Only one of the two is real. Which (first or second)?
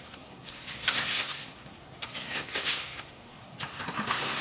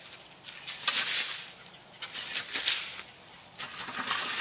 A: second